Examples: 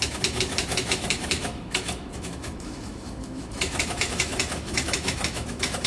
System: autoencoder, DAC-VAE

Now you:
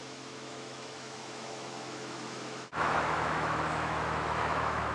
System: autoencoder, DAC-VAE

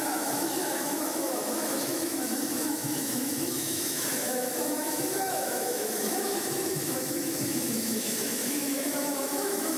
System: autoencoder, DAC-VAE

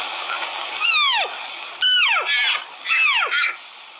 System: none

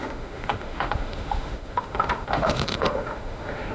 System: autoencoder, DAC-VAE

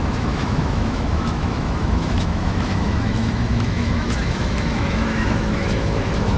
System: autoencoder, DAC-VAE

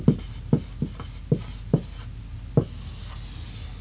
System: none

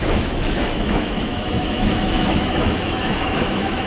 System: autoencoder, DAC-VAE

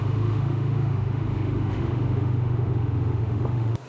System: autoencoder, DAC-VAE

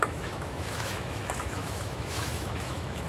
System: autoencoder, DAC-VAE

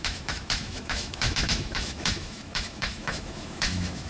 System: autoencoder, DAC-VAE